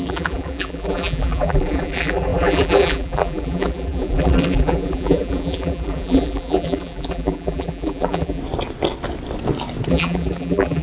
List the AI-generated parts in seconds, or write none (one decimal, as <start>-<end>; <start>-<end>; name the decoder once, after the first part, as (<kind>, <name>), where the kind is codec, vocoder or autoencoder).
0.0-8.4 (vocoder, BigVGAN v2); 9.9-10.8

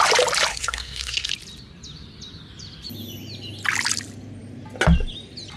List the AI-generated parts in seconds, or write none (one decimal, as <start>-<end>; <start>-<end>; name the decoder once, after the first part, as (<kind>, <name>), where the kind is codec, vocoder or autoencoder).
0.5-1.3 (codec, SNAC)

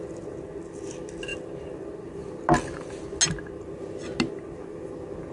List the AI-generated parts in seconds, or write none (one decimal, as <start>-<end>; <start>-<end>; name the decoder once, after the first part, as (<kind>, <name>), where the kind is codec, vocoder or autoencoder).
none

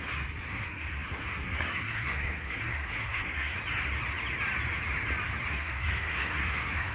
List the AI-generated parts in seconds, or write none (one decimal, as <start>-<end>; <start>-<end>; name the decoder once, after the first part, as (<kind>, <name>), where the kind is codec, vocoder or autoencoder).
0.0-3.6 (codec, SNAC); 5.5-6.9

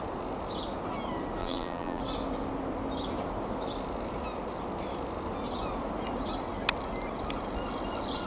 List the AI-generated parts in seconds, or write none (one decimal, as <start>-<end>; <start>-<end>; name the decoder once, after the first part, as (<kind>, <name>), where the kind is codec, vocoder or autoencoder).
1.4-2.0 (vocoder, BigVGAN v2)